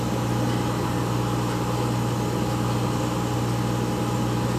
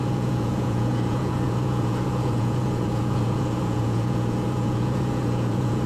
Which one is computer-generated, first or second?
second